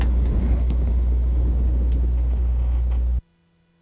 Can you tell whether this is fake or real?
real